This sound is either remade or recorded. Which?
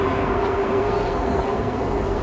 remade